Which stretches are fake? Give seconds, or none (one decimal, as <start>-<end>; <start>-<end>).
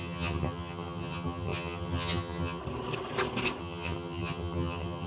0.0-2.6; 3.6-5.1